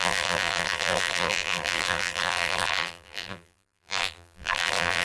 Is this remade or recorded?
remade